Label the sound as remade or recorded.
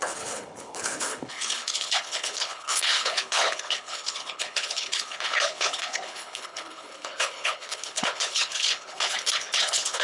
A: remade